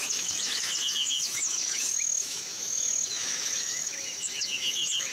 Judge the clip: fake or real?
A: fake